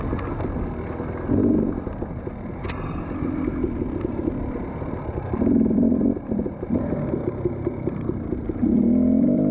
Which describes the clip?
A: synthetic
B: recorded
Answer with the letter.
B